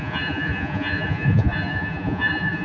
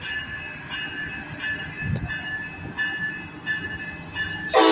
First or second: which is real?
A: second